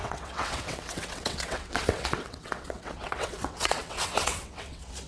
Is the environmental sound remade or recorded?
remade